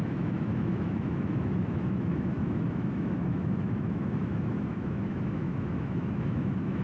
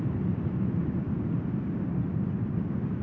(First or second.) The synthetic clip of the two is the first